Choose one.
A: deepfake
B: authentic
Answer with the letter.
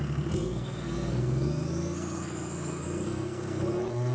A